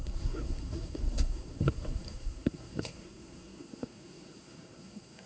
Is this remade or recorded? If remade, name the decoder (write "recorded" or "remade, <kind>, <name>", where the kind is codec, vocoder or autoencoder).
remade, codec, SNAC